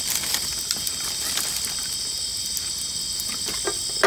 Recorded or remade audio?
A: recorded